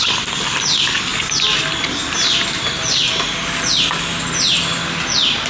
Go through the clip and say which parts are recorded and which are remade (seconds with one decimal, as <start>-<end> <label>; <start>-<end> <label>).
0.0-5.5 recorded